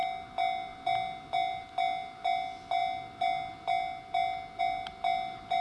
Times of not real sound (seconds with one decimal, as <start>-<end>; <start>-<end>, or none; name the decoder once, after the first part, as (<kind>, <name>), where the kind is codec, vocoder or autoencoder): none